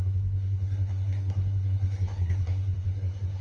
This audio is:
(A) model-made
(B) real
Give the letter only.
A